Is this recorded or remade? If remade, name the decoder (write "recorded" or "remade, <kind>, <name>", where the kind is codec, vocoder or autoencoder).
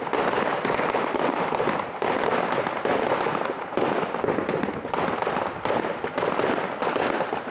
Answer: recorded